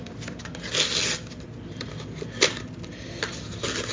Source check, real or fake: real